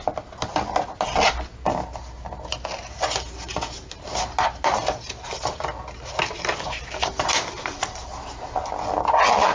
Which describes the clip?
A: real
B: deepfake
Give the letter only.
A